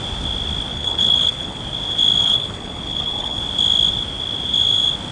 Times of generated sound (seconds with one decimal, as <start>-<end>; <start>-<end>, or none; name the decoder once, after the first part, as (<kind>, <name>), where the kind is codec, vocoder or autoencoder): 0.7-1.6 (codec, HILCodec); 2.2-3.4